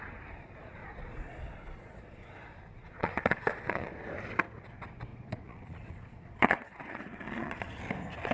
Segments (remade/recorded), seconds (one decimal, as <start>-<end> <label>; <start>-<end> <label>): 0.0-0.8 recorded; 0.8-3.9 remade; 3.9-5.1 recorded; 5.1-7.8 remade; 7.8-8.3 recorded